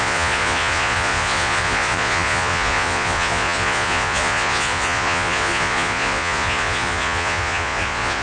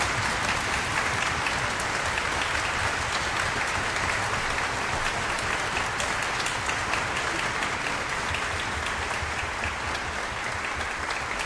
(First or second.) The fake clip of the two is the first